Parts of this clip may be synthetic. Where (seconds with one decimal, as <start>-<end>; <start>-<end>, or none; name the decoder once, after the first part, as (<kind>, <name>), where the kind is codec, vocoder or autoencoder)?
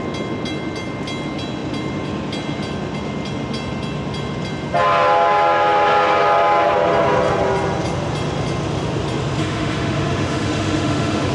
9.4-11.3 (autoencoder, DAC-VAE)